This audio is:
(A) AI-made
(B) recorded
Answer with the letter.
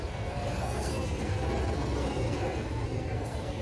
A